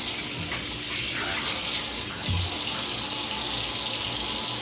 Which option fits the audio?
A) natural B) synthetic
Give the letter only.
A